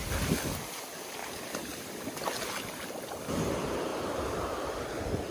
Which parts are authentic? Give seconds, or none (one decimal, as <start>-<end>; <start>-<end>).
0.0-5.3